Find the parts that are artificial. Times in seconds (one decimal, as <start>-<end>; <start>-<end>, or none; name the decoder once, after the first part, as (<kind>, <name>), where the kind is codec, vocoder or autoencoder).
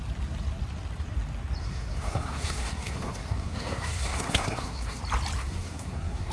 1.6-5.0 (codec, SNAC); 5.4-6.3